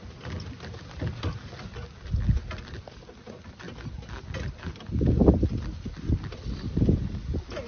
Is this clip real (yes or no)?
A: yes